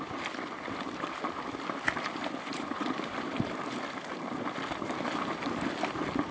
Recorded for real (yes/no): no